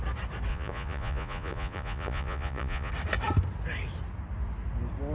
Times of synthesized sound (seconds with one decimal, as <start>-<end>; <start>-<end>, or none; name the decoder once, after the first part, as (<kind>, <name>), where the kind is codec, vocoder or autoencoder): 0.5-2.9 (vocoder, Vocos)